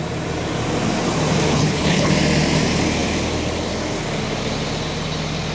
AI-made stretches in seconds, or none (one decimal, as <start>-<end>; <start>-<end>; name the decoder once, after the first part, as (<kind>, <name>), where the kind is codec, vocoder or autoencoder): 1.5-2.1 (codec, HILCodec)